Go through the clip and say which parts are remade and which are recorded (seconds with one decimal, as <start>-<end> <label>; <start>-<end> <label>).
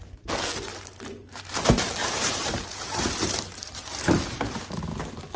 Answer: 0.0-0.7 recorded; 0.7-1.6 remade; 1.6-2.0 recorded; 2.0-5.4 remade